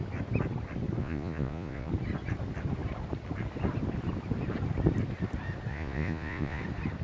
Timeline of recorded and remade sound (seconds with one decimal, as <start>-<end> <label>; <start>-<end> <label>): 0.0-1.0 recorded; 1.0-1.9 remade; 1.9-5.7 recorded; 5.7-6.6 remade; 6.6-7.0 recorded